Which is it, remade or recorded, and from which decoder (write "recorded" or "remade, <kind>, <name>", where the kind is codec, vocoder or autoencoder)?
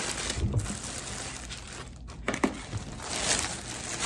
recorded